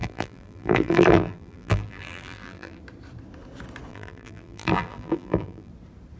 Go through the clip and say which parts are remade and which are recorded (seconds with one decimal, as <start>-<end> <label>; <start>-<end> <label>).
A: 0.0-2.8 remade; 2.8-3.9 recorded; 3.9-5.7 remade; 5.7-6.2 recorded